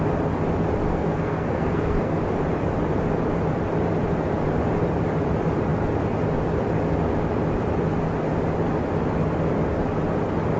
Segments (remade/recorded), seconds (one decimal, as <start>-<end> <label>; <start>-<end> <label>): 0.0-0.9 recorded; 0.9-2.2 remade; 2.2-10.6 recorded

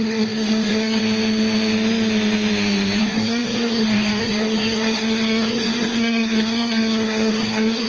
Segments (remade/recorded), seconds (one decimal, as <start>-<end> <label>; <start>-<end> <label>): 0.0-1.0 remade; 1.0-3.0 recorded; 3.0-7.9 remade

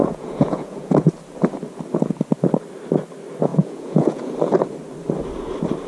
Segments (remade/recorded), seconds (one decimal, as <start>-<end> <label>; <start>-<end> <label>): 0.0-1.1 remade; 1.1-3.5 recorded; 3.5-4.3 remade; 4.3-5.9 recorded

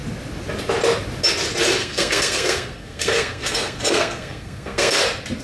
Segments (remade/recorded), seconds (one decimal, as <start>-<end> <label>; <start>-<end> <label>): 0.0-1.8 recorded; 1.8-5.0 remade; 5.0-5.4 recorded

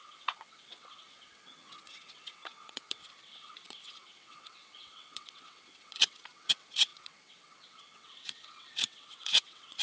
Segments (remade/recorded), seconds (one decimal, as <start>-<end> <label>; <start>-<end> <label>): 0.0-9.8 remade

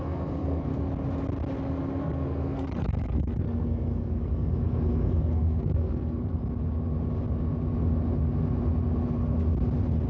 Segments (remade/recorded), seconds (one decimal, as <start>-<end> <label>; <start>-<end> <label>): 0.0-0.7 remade; 0.7-2.0 recorded; 2.0-6.4 remade; 6.4-10.1 recorded

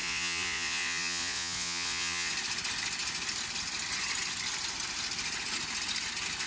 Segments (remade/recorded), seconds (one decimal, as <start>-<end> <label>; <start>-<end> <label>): 0.0-2.3 remade; 2.3-6.5 recorded

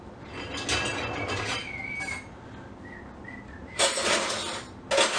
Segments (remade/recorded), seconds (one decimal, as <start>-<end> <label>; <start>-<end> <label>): 0.0-5.2 recorded